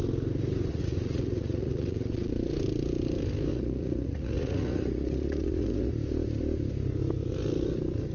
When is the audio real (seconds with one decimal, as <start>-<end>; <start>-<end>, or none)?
0.0-0.7; 2.3-3.5; 5.9-8.1